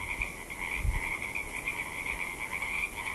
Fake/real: real